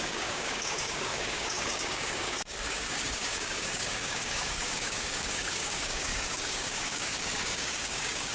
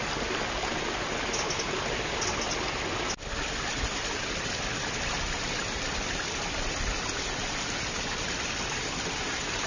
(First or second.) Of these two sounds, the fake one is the first